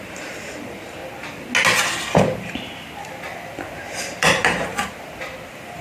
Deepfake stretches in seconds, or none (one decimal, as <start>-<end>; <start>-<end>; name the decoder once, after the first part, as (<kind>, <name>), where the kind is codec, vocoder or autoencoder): 0.0-1.0 (vocoder, BigVGAN v2); 4.0-4.7